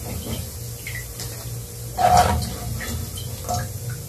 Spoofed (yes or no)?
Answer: no